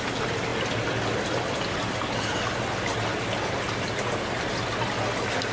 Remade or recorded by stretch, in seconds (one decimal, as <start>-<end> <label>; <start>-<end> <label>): 0.0-5.5 recorded